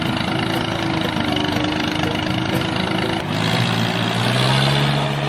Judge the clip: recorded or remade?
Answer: recorded